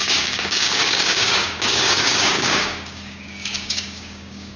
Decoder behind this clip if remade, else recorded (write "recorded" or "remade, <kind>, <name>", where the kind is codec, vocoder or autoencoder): remade, codec, DAC